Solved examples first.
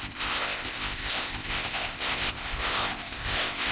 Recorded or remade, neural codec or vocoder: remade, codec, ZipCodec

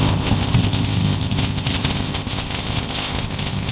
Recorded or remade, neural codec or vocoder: remade, codec, ZipCodec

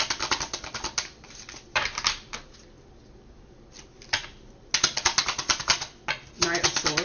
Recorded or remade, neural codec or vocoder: recorded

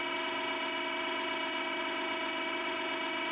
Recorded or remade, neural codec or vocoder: recorded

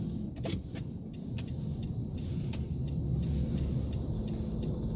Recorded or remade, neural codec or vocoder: recorded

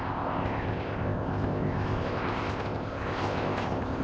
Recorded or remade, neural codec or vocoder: remade, codec, ZipCodec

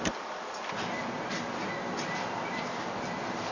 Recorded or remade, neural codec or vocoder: recorded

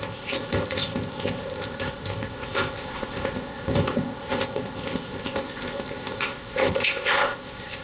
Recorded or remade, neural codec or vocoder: remade, codec, ZipCodec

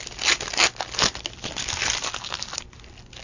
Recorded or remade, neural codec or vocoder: recorded